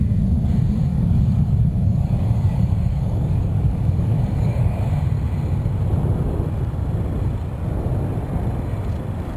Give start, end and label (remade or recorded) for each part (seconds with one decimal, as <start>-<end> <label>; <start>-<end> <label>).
0.0-0.9 recorded; 0.9-4.9 remade; 4.9-9.4 recorded